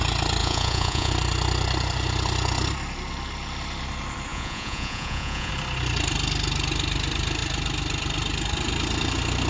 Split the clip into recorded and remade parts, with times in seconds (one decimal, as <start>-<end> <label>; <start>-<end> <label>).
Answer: 0.0-0.4 recorded; 0.4-1.1 remade; 1.1-4.3 recorded; 4.3-5.5 remade; 5.5-9.5 recorded